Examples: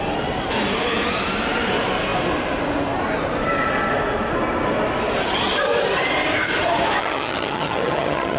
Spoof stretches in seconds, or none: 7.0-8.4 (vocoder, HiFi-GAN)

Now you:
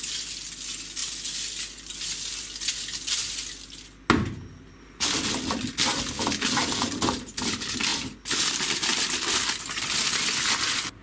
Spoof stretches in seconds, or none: none

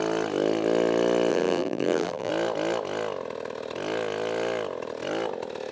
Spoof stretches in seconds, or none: 1.3-2.3 (vocoder, BigVGAN v2)

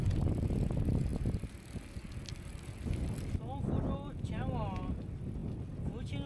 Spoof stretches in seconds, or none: none

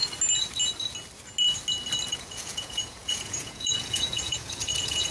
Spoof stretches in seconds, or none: 2.1-5.1 (vocoder, Vocos)

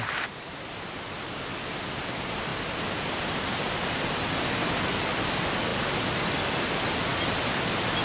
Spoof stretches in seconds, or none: none

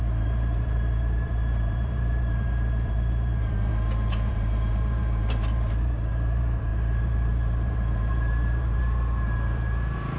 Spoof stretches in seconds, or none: 0.0-3.7 (vocoder, BigVGAN v2); 4.3-10.2